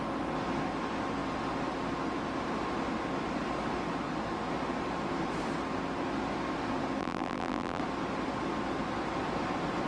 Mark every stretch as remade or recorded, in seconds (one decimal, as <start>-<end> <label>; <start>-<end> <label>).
0.0-7.0 recorded; 7.0-7.8 remade; 7.8-9.9 recorded